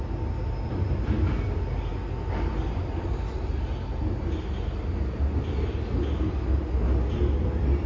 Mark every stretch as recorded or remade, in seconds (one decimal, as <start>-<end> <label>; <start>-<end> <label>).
0.0-7.9 recorded